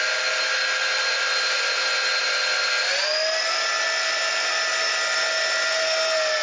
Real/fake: real